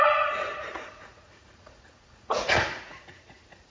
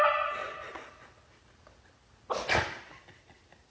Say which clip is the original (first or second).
second